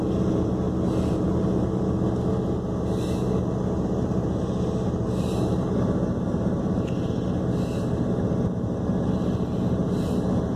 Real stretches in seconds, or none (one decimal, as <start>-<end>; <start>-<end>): 0.0-5.5; 6.4-10.6